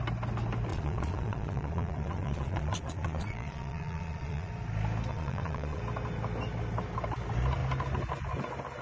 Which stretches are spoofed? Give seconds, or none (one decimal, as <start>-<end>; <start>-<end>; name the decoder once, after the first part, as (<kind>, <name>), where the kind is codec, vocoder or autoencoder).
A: 0.7-4.5 (vocoder, Vocos); 5.1-5.8